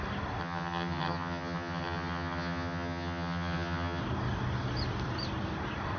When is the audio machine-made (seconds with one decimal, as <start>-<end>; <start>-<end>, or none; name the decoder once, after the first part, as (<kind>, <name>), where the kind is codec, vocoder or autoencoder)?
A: 0.4-4.0 (vocoder, HiFi-GAN)